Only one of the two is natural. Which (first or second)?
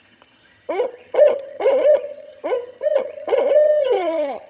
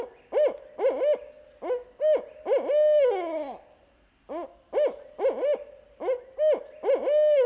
second